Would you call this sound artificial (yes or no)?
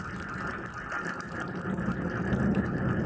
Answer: no